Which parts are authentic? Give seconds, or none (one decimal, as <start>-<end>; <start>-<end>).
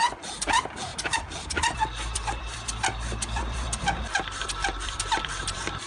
none